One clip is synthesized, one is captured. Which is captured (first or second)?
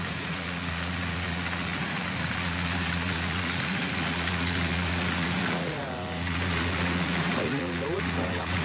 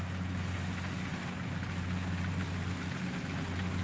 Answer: second